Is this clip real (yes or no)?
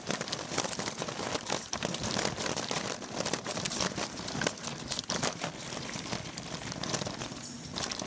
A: no